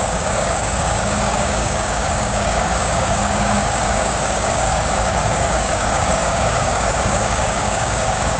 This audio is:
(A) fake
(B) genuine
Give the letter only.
A